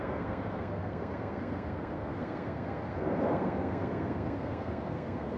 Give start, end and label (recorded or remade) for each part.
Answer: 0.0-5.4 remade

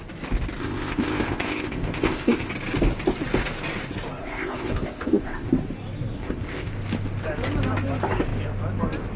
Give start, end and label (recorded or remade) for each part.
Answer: 0.0-0.6 recorded; 0.6-2.5 remade; 2.5-4.2 recorded; 4.2-5.5 remade; 5.5-6.1 recorded; 6.1-6.7 remade; 6.7-9.2 recorded

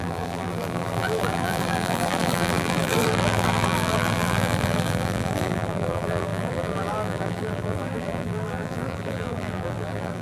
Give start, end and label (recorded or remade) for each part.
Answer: 0.0-10.2 remade

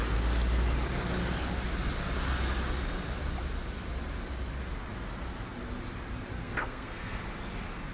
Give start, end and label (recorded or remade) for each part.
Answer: 0.0-6.3 recorded; 6.3-7.2 remade; 7.2-7.9 recorded